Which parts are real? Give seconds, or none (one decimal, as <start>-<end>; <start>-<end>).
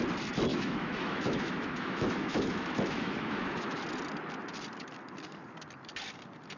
0.0-0.5; 3.8-6.6